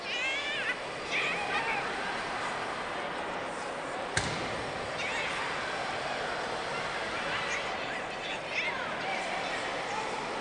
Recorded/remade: recorded